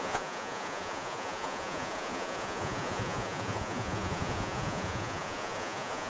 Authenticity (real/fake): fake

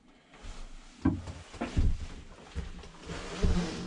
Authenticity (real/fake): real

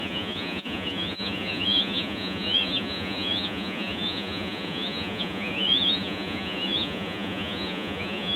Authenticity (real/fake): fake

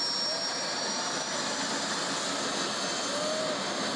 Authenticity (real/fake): real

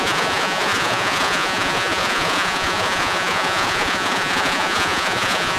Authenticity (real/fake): fake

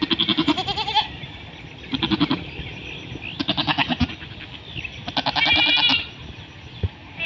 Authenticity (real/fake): real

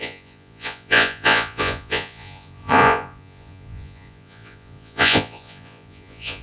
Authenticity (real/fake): fake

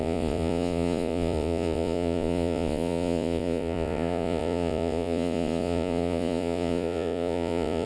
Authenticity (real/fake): fake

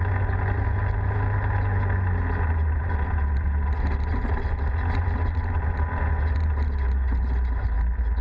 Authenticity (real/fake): real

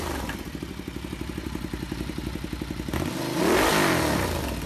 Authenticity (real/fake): real